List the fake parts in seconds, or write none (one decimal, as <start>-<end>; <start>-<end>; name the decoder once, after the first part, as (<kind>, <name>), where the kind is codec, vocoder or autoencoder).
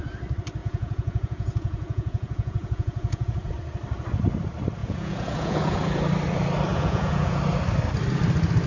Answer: 0.6-3.5 (vocoder, Vocos); 4.8-6.0; 6.7-7.4